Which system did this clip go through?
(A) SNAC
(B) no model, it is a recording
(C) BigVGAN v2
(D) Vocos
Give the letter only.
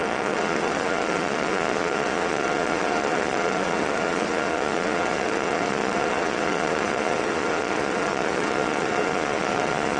D